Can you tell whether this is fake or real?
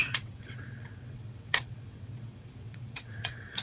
fake